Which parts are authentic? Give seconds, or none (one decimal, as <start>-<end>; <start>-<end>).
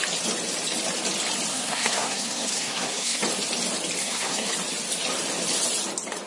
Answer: 0.0-1.5; 3.2-4.0; 4.5-6.3